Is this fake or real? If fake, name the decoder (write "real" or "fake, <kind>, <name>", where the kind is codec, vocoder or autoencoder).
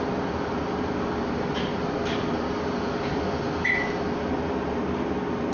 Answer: real